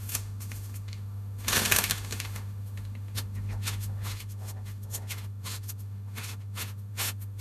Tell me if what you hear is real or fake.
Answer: fake